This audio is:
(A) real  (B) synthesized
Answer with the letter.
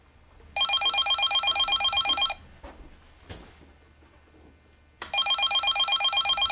A